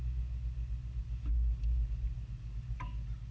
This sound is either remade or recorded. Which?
recorded